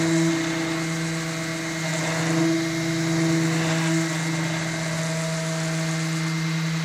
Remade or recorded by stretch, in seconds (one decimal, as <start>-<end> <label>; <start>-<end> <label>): 0.0-6.8 recorded